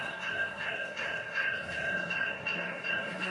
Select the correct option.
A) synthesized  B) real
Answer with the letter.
A